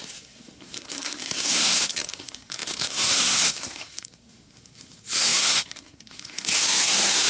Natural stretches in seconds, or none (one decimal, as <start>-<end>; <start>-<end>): none